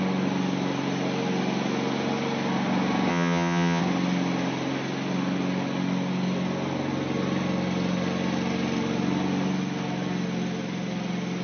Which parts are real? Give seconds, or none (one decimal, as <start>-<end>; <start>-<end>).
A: 0.0-3.1; 3.8-11.4